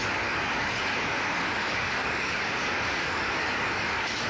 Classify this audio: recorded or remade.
remade